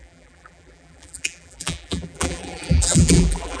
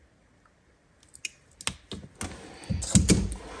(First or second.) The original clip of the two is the second